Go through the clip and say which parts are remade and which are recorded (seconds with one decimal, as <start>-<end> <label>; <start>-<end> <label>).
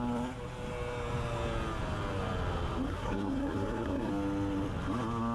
0.0-2.9 recorded; 2.9-4.1 remade; 4.1-5.3 recorded